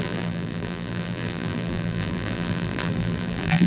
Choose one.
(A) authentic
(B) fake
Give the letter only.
B